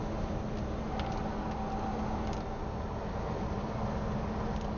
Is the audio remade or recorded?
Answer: recorded